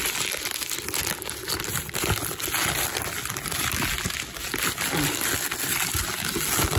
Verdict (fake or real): real